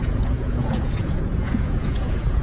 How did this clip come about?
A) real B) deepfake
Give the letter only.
B